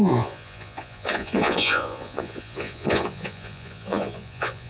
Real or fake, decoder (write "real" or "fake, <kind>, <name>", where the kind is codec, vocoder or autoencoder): fake, vocoder, Vocos